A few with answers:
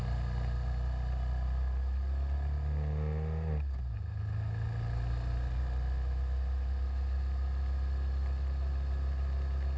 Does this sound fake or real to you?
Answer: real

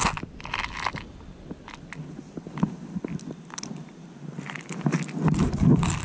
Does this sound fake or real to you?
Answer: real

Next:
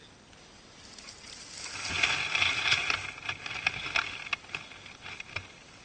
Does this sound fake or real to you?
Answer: real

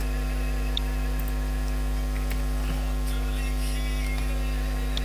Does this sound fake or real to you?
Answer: real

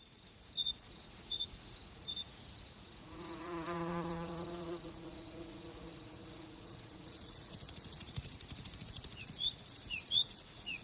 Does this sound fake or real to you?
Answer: fake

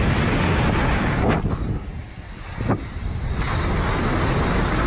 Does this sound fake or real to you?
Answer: real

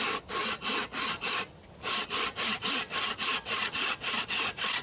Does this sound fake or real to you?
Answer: real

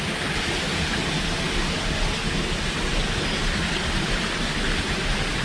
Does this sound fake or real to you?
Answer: real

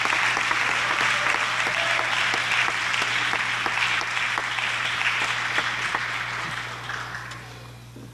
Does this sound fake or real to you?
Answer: real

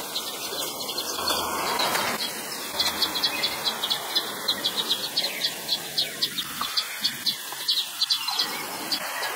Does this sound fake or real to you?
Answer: real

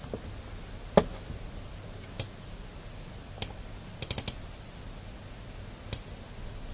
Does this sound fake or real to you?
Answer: real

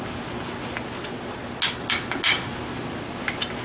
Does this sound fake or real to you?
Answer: real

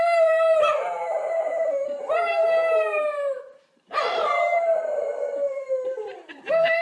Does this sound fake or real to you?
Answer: fake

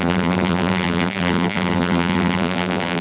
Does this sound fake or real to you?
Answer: fake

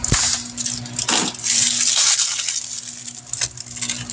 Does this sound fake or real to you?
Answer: real